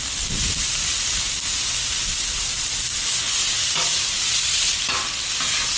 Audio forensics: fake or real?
real